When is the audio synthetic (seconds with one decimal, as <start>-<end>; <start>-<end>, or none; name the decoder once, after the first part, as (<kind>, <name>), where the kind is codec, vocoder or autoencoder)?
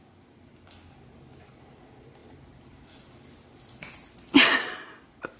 none